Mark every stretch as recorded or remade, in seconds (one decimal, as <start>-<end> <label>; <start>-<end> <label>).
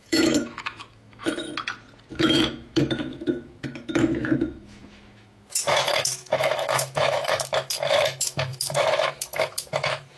0.0-1.5 remade; 1.5-2.1 recorded; 2.1-10.2 remade